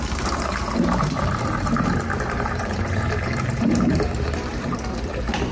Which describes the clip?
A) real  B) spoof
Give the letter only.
B